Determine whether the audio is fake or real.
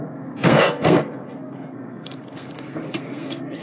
fake